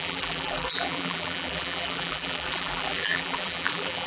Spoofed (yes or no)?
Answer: yes